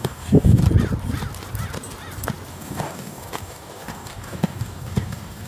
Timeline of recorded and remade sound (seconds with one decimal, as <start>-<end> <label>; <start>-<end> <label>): 0.0-0.6 remade; 0.6-2.5 recorded; 2.5-5.5 remade